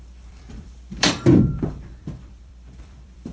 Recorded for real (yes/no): no